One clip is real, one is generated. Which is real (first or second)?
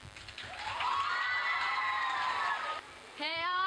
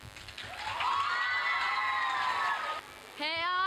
second